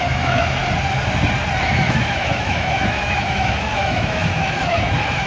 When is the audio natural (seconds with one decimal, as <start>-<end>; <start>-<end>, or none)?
0.6-1.6